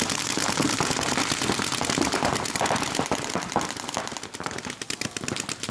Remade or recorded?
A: recorded